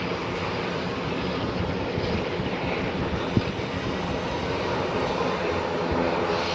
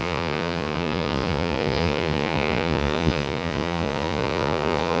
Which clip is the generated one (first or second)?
second